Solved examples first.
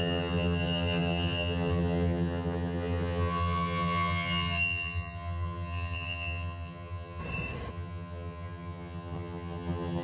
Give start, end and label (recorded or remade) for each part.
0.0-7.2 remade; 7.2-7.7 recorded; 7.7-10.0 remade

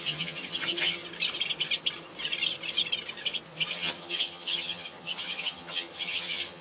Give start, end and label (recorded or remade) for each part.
0.0-1.0 remade; 1.0-3.7 recorded; 3.7-6.6 remade

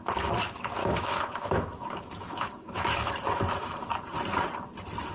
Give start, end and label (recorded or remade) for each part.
0.0-0.8 recorded; 0.8-3.9 remade; 3.9-5.1 recorded

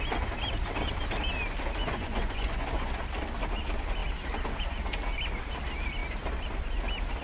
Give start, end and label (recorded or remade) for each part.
0.0-1.8 recorded; 1.8-3.0 remade; 3.0-7.2 recorded